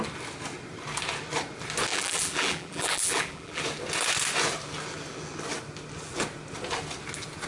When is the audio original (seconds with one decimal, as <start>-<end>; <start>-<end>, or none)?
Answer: 0.0-1.9; 3.6-7.5